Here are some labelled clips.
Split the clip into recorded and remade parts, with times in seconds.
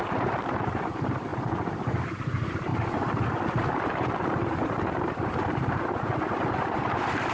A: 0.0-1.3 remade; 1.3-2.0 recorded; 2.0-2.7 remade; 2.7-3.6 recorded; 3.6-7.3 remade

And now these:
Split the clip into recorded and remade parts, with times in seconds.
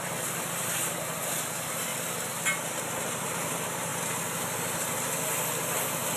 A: 0.0-1.9 remade; 1.9-3.1 recorded; 3.1-3.9 remade; 3.9-6.2 recorded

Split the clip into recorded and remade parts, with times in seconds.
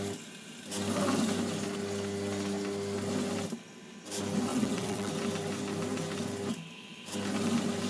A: 0.0-4.5 recorded; 4.5-5.1 remade; 5.1-7.9 recorded